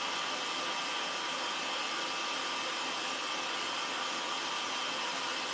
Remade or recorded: recorded